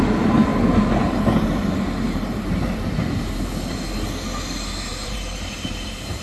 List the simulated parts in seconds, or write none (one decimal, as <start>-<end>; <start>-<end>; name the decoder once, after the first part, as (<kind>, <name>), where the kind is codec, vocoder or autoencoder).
0.5-3.5 (vocoder, BigVGAN v2); 4.9-6.2